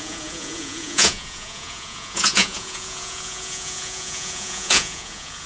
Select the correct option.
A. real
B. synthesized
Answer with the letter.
B